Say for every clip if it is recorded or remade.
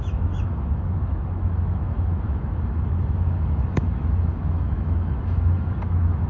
remade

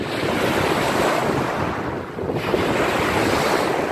recorded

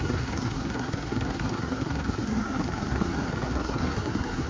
remade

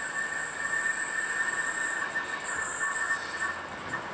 recorded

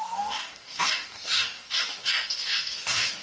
remade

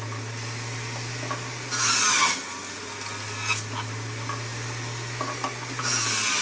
recorded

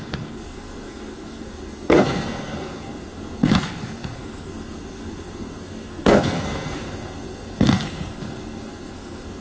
remade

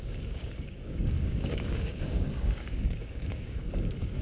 remade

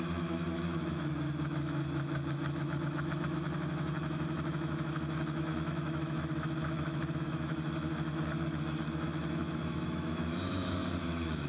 remade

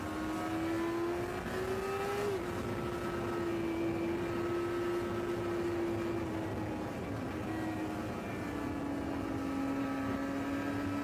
recorded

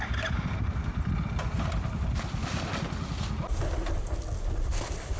recorded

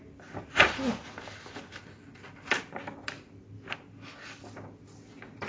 recorded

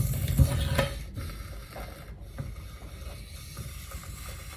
recorded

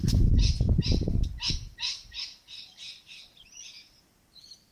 recorded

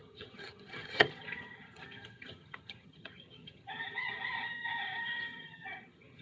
remade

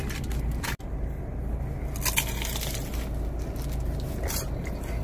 recorded